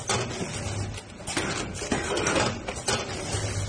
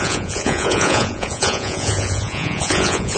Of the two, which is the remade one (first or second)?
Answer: second